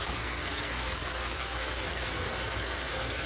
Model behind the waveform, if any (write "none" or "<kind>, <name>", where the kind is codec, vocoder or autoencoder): codec, SNAC